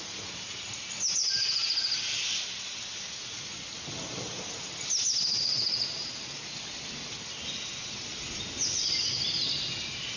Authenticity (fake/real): real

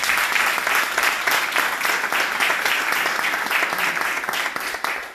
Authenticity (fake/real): real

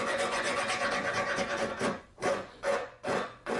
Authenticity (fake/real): fake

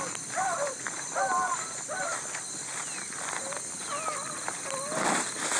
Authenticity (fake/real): real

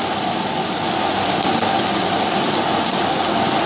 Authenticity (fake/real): real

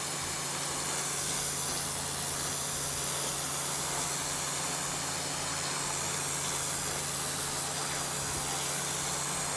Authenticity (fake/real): real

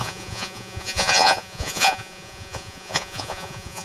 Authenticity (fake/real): fake